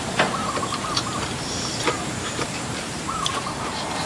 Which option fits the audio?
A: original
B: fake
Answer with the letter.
B